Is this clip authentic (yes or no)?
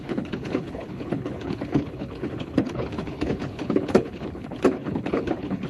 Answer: no